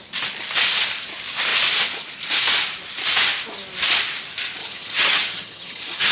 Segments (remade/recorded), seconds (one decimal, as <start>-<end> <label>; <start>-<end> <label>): 0.0-4.6 recorded; 4.6-6.1 remade